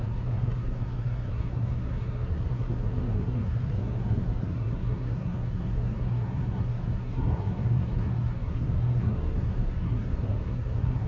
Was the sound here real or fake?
fake